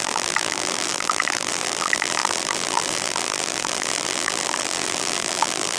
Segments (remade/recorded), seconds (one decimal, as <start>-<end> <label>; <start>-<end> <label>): 0.0-5.8 remade